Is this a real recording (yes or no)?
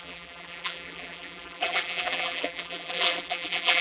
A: no